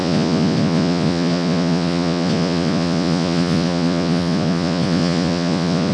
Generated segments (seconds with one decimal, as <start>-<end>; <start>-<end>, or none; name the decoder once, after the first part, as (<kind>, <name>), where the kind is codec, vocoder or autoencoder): 0.0-5.9 (vocoder, Vocos)